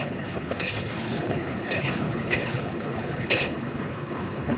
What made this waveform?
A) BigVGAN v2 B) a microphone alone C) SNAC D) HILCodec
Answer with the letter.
D